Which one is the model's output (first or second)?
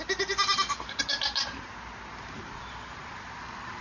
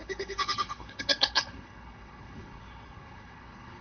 second